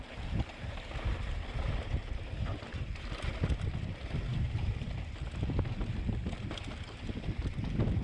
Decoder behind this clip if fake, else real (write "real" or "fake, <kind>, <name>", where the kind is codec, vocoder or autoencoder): real